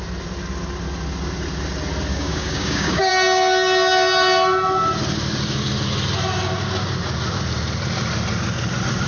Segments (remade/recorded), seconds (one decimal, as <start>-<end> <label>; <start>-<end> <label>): 0.0-2.1 recorded; 2.1-3.1 remade; 3.1-9.1 recorded

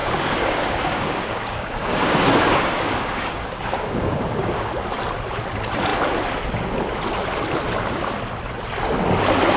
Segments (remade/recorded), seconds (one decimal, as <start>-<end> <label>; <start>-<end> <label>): 0.0-4.7 remade; 4.7-9.6 recorded